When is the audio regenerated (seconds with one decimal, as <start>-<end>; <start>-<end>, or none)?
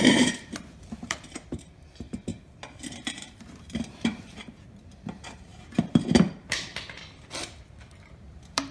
0.0-2.3; 2.9-6.7; 7.9-8.7